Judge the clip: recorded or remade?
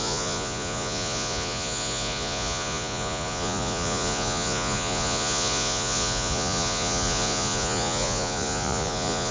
remade